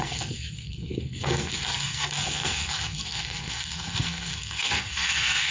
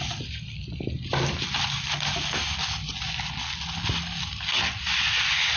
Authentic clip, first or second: second